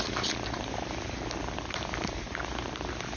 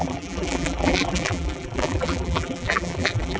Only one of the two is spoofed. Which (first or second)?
second